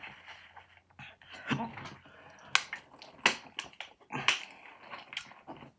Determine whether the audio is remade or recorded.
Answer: recorded